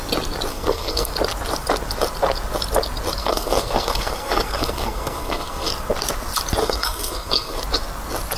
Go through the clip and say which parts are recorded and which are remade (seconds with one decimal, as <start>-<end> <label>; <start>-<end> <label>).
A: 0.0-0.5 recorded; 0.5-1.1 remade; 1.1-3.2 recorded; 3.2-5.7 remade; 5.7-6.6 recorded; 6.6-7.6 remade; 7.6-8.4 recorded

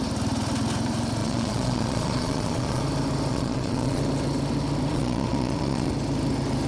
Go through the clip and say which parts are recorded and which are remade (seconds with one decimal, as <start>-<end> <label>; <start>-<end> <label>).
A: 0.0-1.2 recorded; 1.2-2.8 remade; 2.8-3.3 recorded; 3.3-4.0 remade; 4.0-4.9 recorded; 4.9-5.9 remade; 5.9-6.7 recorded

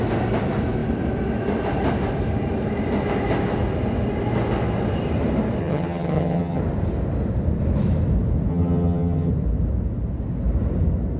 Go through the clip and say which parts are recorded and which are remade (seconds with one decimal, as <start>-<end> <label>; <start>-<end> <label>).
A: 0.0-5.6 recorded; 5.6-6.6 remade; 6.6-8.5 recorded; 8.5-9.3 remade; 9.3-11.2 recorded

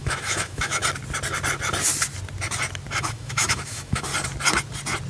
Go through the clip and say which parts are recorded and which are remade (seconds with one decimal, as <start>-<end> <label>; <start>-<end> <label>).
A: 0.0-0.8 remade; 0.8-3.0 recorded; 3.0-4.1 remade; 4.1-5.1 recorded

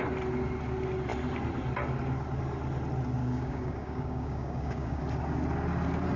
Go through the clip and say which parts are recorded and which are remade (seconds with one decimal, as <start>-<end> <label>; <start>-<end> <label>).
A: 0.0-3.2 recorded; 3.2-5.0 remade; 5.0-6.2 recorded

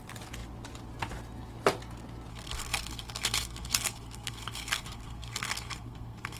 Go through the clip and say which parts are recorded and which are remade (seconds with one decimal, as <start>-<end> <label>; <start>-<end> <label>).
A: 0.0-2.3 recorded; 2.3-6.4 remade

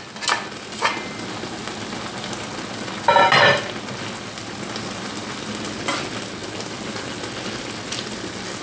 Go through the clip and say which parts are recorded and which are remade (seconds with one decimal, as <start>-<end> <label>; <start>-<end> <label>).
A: 0.0-5.2 recorded; 5.2-5.8 remade; 5.8-8.6 recorded

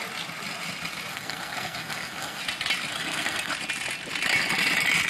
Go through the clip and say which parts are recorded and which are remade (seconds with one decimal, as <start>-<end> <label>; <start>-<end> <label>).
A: 0.0-1.1 recorded; 1.1-2.4 remade; 2.4-2.9 recorded; 2.9-3.5 remade; 3.5-5.1 recorded